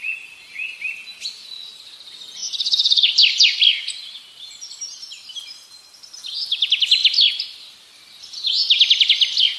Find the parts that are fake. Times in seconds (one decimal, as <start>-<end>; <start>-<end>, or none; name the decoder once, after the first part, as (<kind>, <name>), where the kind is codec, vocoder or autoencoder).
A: 2.4-3.1 (vocoder, Vocos)